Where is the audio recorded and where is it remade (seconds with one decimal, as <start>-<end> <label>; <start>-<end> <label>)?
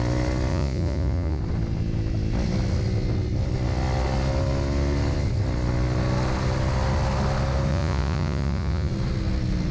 0.0-0.5 recorded; 0.5-1.4 remade; 1.4-7.7 recorded; 7.7-8.9 remade; 8.9-9.7 recorded